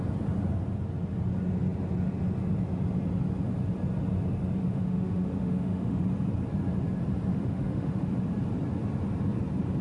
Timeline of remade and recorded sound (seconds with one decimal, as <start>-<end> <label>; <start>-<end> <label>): 0.0-4.6 recorded; 4.6-6.0 remade; 6.0-7.3 recorded; 7.3-8.1 remade; 8.1-9.8 recorded